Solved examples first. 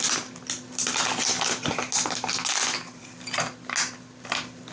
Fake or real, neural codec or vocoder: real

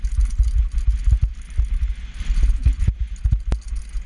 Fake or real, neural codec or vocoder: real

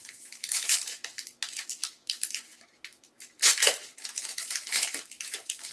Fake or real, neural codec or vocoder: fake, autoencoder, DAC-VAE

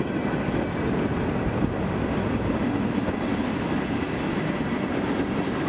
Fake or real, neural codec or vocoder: real